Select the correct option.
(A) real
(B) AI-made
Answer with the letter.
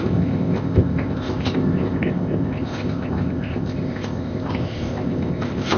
B